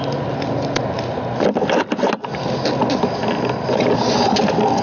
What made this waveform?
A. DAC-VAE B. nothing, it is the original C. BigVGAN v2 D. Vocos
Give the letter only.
B